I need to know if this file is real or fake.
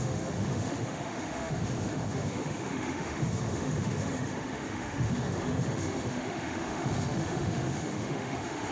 fake